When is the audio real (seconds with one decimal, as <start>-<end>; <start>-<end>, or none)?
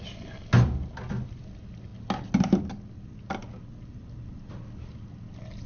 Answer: 0.0-5.7